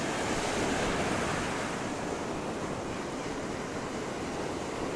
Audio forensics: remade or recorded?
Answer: recorded